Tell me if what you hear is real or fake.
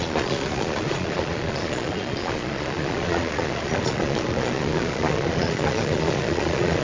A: fake